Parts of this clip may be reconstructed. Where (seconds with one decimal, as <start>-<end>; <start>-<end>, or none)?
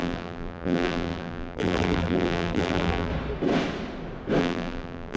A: 0.0-3.1; 4.4-5.2